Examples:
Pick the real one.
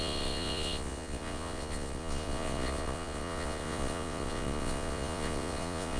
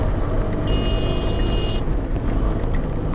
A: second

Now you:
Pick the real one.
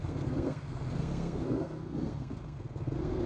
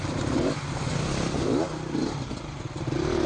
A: second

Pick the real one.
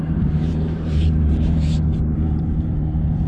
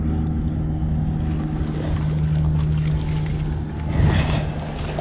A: second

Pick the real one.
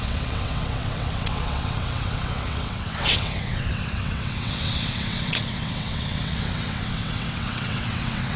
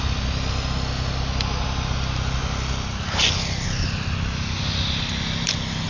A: second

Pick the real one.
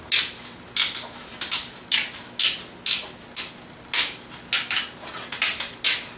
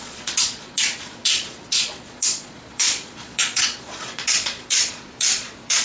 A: first